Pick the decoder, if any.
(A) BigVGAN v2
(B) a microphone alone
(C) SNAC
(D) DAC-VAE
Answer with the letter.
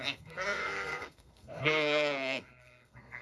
C